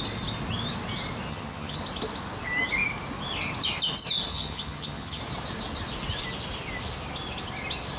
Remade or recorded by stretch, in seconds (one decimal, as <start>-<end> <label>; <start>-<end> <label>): 0.0-1.3 recorded; 1.3-1.8 remade; 1.8-4.3 recorded; 4.3-5.2 remade; 5.2-8.0 recorded